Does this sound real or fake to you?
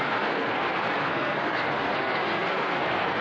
fake